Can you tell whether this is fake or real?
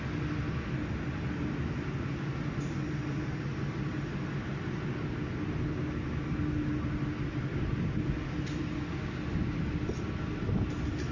real